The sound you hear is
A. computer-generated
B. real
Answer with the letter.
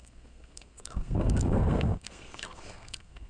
A